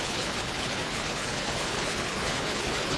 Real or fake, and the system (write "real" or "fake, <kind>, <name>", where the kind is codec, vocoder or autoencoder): fake, codec, HILCodec